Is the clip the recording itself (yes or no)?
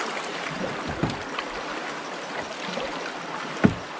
yes